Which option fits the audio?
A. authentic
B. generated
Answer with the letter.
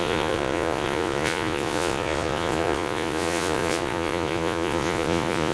B